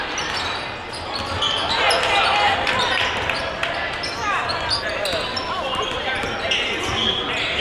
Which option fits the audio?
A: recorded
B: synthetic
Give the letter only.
A